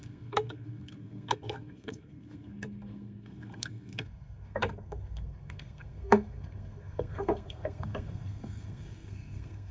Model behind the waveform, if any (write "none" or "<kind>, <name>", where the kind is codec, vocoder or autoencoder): codec, SNAC